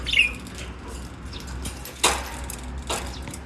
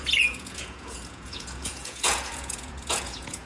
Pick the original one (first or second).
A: first